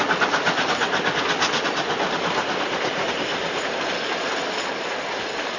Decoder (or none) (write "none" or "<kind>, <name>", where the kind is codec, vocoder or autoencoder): none